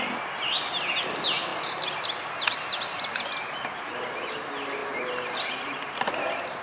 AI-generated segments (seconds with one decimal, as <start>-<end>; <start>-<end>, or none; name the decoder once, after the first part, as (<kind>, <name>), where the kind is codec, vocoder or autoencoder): none